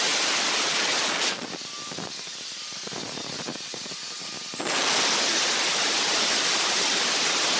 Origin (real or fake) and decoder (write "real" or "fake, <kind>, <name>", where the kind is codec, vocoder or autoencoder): real